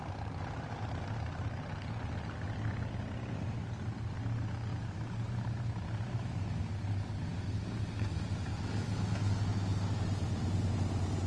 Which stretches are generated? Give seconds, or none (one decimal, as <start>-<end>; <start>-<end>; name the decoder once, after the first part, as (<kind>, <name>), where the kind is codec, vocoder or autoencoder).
4.7-6.2 (vocoder, BigVGAN v2)